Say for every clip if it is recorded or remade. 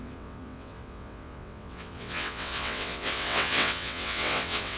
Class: remade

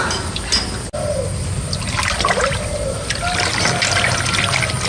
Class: recorded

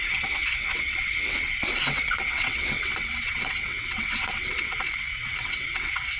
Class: remade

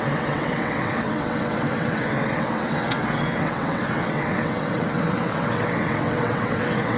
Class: remade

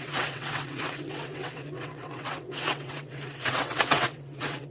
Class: remade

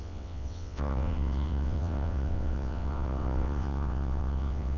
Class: remade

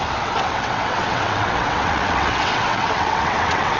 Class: remade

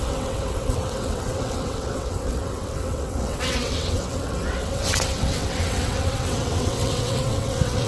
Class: remade